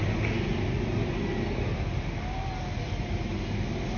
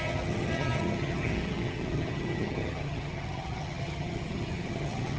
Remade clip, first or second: second